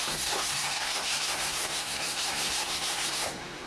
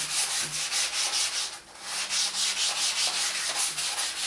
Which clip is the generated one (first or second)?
first